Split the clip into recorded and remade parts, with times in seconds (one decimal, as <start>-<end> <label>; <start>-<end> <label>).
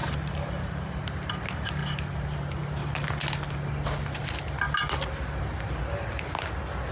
0.0-1.0 remade; 1.0-6.9 recorded